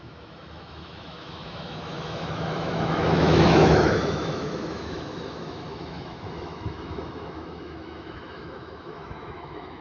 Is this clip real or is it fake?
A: fake